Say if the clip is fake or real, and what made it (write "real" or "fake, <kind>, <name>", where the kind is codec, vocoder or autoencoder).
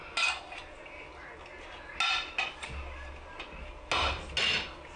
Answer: real